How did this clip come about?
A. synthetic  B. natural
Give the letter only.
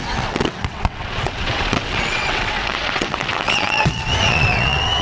A